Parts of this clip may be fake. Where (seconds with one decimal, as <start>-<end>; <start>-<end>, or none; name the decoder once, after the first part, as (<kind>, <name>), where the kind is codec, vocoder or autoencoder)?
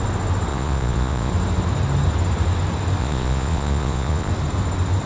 0.5-1.3 (vocoder, Vocos); 3.0-4.3